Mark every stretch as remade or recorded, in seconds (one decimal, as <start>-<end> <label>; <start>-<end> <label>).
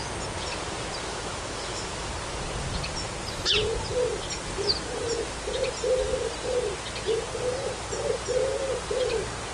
0.0-1.1 recorded; 1.1-2.1 remade; 2.1-9.5 recorded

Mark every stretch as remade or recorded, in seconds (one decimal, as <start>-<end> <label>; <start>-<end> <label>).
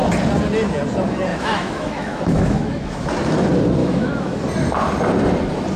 0.0-1.3 recorded; 1.3-3.1 remade; 3.1-3.8 recorded; 3.8-4.4 remade; 4.4-5.8 recorded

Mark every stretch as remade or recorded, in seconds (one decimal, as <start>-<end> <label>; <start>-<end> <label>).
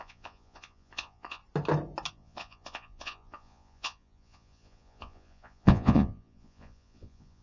0.0-1.4 remade; 1.4-2.1 recorded; 2.1-7.4 remade